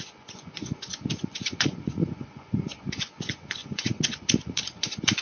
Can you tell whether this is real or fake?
fake